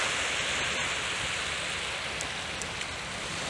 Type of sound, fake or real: real